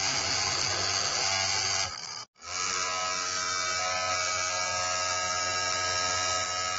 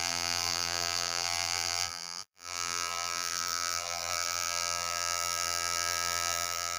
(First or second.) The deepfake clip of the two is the second